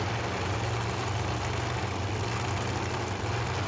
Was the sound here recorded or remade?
recorded